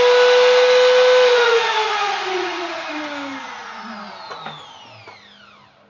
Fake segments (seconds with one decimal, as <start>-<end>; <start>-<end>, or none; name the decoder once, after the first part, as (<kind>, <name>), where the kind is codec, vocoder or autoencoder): 1.3-3.0 (vocoder, Vocos); 3.4-4.1